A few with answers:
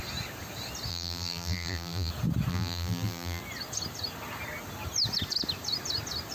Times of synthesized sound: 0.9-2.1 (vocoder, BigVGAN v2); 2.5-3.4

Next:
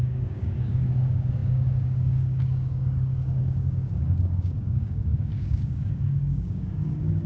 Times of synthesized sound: 0.0-7.3 (codec, DAC)

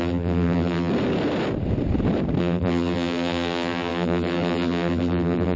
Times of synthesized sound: 0.0-0.9 (vocoder, BigVGAN v2); 2.4-5.6

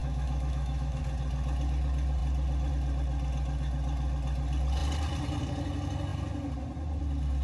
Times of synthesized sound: 0.0-1.0 (autoencoder, DAC-VAE)